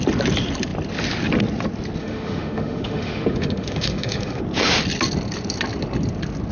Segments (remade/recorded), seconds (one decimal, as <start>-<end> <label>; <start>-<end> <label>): 0.0-2.0 recorded; 2.0-4.4 remade; 4.4-6.5 recorded